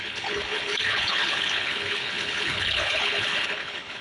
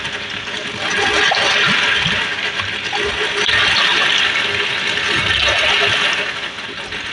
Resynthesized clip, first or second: first